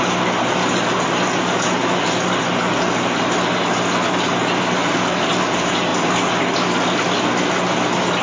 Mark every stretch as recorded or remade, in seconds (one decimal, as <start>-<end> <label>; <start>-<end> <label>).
0.0-8.2 recorded